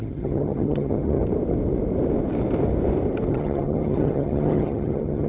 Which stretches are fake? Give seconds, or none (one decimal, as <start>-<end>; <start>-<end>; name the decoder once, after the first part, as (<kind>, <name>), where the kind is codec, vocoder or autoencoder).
0.0-1.2 (vocoder, HiFi-GAN); 3.3-5.3